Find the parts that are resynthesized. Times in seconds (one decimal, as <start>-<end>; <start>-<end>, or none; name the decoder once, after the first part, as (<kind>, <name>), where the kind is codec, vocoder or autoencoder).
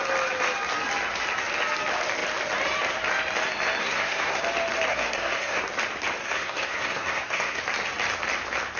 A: 3.8-4.4 (codec, SNAC); 4.9-5.6; 6.2-7.6